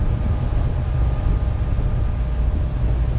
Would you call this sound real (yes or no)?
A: yes